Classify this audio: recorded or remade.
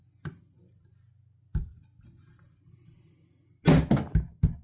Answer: recorded